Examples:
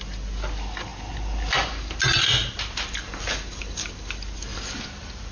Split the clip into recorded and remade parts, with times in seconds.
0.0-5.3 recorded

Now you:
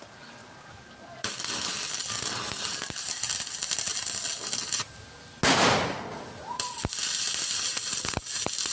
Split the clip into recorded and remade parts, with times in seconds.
0.0-8.7 recorded

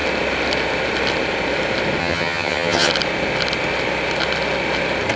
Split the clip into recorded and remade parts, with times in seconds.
0.0-2.0 recorded; 2.0-2.9 remade; 2.9-5.2 recorded

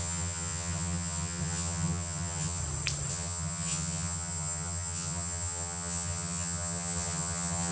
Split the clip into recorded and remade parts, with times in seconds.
0.0-2.6 remade; 2.6-3.1 recorded; 3.1-7.7 remade

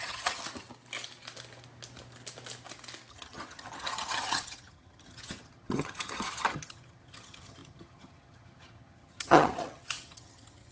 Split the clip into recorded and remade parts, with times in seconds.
0.0-0.4 remade; 0.4-3.1 recorded; 3.1-10.7 remade

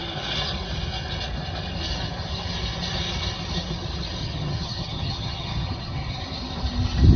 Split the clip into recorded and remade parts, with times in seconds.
0.0-4.2 recorded; 4.2-6.2 remade; 6.2-7.2 recorded

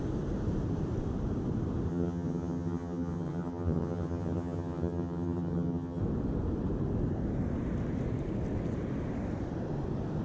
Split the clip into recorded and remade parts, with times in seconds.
0.0-1.9 recorded; 1.9-6.0 remade; 6.0-10.2 recorded